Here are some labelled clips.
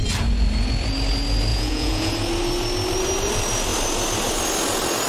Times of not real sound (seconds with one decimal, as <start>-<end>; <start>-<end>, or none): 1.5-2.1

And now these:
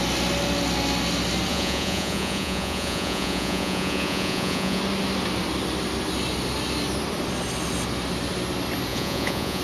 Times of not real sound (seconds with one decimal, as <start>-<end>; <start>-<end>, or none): 1.5-4.8; 8.9-9.6

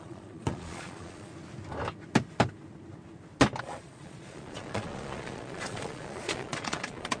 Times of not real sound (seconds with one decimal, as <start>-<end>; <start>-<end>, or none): 0.0-1.3; 3.6-7.2

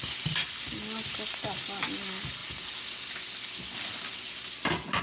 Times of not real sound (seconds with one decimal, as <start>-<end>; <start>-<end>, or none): none